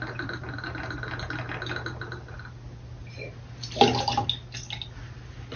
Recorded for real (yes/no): yes